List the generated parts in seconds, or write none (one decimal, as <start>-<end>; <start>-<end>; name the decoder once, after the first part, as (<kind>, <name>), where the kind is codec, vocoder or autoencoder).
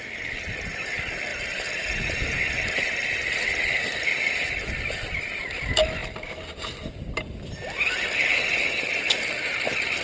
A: none